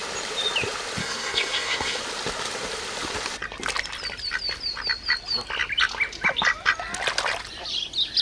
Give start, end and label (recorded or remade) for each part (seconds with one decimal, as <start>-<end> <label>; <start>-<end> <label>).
0.0-1.0 recorded; 1.0-2.0 remade; 2.0-8.2 recorded